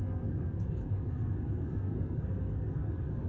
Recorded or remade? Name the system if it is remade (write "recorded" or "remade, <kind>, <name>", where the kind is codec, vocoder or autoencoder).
remade, codec, SNAC